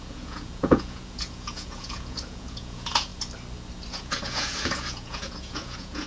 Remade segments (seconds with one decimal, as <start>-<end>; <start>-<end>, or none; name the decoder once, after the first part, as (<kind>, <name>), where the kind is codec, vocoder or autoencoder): 0.0-3.1 (vocoder, Vocos); 3.9-6.1